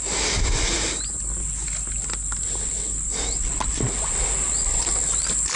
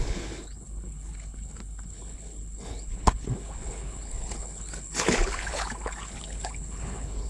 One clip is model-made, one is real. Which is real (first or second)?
first